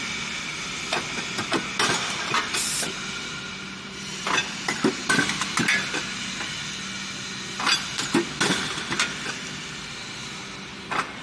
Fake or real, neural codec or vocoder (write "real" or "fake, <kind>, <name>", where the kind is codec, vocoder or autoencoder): real